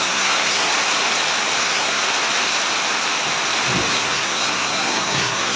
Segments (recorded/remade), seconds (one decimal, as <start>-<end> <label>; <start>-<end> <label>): 0.0-0.7 remade; 0.7-1.6 recorded; 1.6-2.0 remade; 2.0-3.9 recorded; 3.9-5.6 remade